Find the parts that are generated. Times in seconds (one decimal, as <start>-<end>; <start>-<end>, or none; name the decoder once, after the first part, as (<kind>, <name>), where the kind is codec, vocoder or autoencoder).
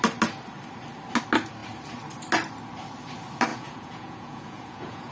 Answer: 3.5-5.1 (vocoder, Vocos)